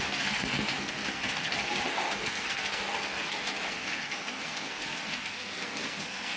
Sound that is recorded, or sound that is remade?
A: remade